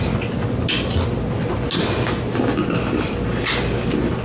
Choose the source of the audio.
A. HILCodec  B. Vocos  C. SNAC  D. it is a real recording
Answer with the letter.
D